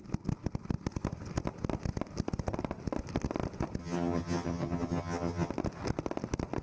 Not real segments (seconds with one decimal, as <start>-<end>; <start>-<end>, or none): 3.8-5.5

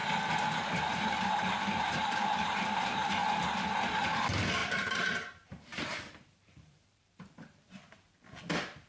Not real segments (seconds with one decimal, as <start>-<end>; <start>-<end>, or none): 0.6-3.2; 3.9-8.9